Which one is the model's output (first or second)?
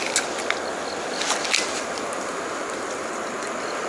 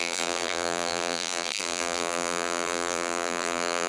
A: second